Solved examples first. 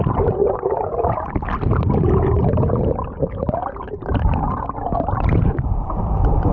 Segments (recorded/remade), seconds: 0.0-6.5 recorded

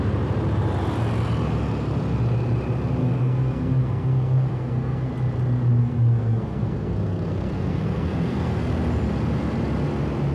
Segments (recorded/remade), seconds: 0.0-3.0 recorded; 3.0-5.1 remade; 5.1-5.8 recorded; 5.8-8.7 remade; 8.7-10.3 recorded

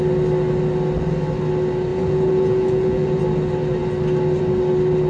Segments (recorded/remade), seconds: 0.0-1.9 recorded; 1.9-3.2 remade; 3.2-5.1 recorded

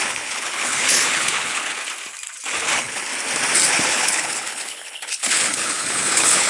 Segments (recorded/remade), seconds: 0.0-1.7 remade; 1.7-2.7 recorded; 2.7-3.1 remade; 3.1-3.7 recorded; 3.7-6.5 remade

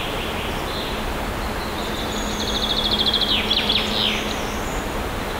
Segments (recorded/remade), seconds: 0.0-5.4 recorded

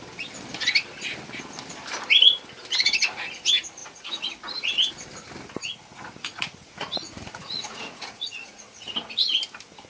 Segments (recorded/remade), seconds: 0.0-3.8 recorded; 3.8-4.3 remade; 4.3-5.9 recorded; 5.9-9.1 remade; 9.1-9.9 recorded